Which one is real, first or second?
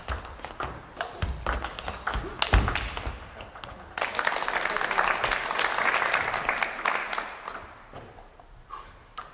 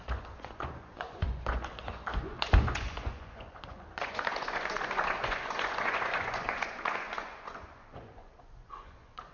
first